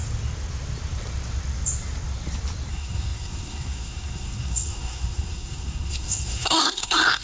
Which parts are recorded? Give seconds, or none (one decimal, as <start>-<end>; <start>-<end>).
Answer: 0.0-2.7